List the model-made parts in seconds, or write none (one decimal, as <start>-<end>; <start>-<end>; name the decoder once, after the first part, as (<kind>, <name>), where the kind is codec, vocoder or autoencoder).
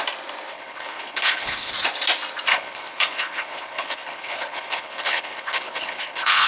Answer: 0.5-1.7 (codec, HILCodec); 2.5-6.5